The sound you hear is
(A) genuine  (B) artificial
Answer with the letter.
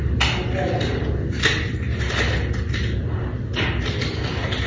A